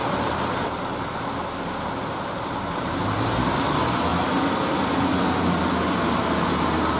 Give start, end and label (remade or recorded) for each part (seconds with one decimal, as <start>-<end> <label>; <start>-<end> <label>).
0.0-7.0 recorded